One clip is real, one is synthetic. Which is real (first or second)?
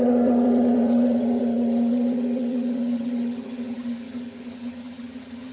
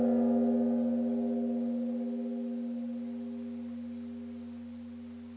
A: second